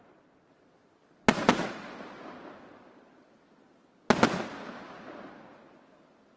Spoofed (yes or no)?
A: no